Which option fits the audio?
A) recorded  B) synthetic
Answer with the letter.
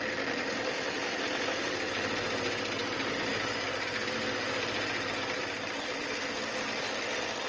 A